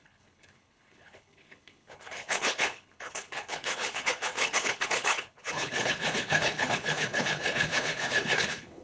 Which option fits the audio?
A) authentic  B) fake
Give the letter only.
B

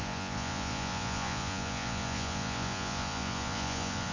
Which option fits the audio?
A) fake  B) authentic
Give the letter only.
A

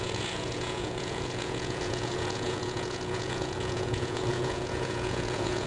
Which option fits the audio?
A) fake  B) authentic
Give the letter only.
A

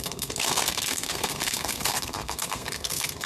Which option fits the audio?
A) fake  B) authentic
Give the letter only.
A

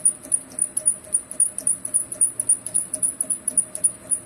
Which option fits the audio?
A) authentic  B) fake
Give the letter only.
A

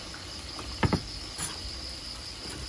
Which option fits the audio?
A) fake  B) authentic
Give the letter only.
B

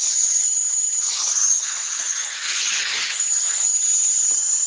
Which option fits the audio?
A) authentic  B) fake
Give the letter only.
B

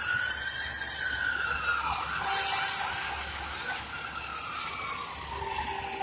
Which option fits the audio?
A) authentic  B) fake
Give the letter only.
A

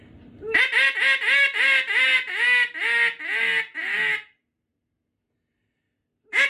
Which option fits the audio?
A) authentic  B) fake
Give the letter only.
A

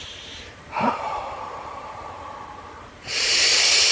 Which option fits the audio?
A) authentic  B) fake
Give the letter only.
B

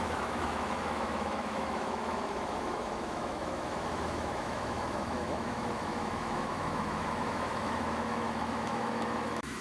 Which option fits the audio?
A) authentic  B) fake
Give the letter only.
B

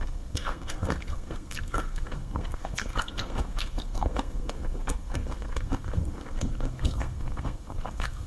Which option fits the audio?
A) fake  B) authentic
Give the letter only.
A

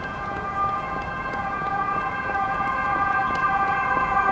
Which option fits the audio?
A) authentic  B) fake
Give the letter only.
B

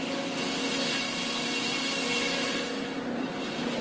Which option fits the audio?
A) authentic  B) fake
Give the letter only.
A